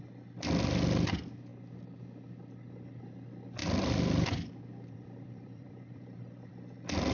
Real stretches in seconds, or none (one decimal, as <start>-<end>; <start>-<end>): 0.0-3.6; 6.5-7.1